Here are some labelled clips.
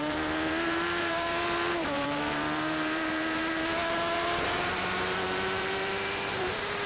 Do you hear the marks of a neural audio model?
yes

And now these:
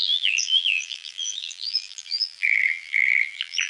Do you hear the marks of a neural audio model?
yes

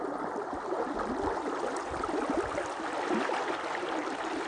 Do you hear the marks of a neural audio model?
no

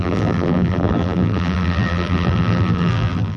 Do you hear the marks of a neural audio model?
yes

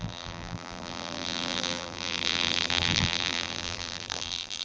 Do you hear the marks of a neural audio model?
yes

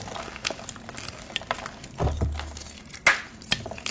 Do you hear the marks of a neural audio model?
no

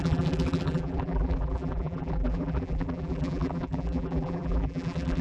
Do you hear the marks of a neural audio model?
yes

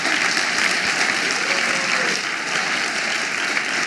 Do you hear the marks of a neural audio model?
no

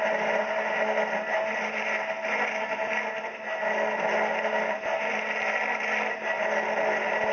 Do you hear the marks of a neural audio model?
no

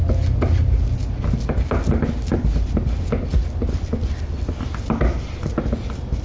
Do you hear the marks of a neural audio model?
no